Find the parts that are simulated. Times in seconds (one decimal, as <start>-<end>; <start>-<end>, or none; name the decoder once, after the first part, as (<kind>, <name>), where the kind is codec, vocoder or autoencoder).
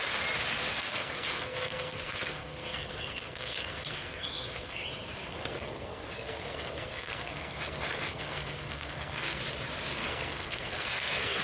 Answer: 0.7-4.8 (codec, SNAC); 5.2-9.4; 10.0-11.4